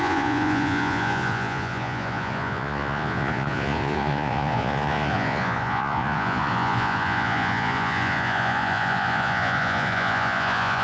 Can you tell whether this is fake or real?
fake